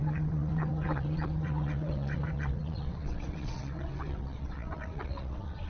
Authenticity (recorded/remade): remade